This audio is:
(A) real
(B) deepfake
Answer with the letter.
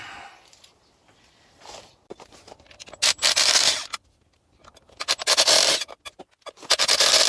A